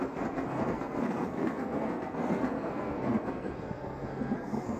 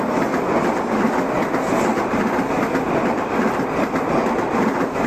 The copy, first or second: first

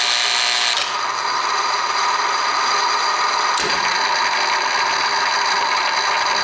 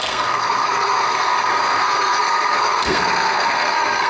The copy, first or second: second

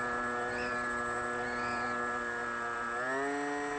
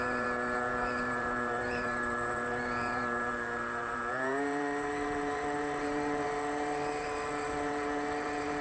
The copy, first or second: second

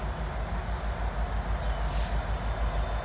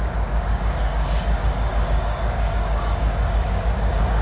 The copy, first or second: second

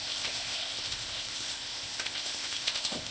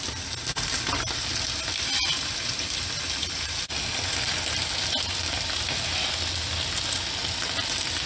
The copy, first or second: first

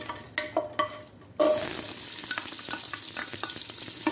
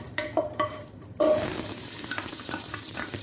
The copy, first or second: second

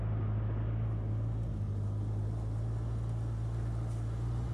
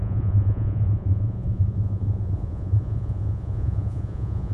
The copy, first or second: second